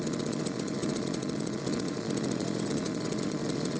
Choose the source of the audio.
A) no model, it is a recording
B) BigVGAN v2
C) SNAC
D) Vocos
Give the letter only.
D